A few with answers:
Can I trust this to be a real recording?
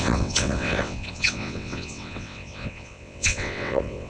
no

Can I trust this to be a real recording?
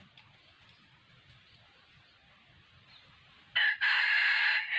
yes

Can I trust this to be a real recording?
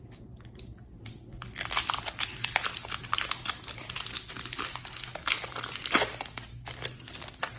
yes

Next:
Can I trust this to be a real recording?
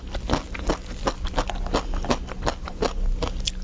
yes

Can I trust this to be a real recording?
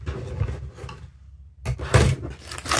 yes